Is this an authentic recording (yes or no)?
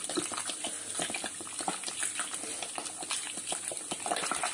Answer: yes